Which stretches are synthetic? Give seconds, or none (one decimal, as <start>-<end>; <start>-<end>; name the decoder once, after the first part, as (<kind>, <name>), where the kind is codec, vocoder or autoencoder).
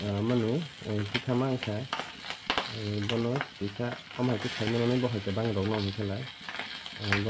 none